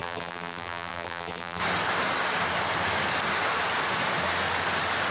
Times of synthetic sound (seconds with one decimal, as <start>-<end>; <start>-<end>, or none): 0.0-1.6